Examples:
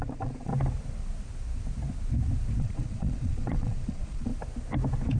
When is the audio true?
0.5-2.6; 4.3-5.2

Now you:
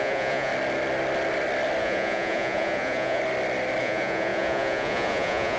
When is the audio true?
0.5-1.8; 3.2-3.8

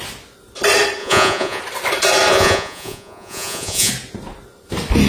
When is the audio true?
0.0-1.0; 1.6-2.3; 3.9-5.1

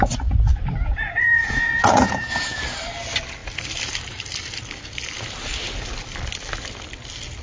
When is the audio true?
0.0-0.8; 2.6-7.4

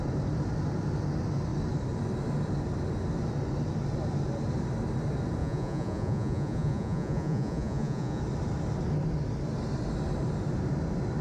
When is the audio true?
0.0-5.4; 8.2-11.2

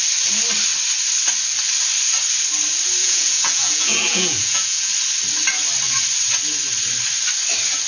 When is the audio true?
0.0-3.0; 4.9-7.9

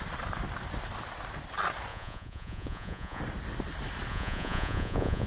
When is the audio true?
0.0-1.9; 3.2-4.1